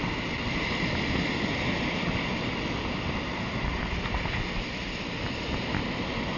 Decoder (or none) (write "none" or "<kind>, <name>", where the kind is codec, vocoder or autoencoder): none